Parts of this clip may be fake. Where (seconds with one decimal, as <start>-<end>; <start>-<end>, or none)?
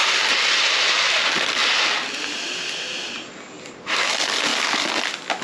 0.0-1.1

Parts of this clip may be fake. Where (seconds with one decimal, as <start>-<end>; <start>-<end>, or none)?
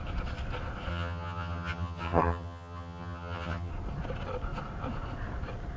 0.9-3.7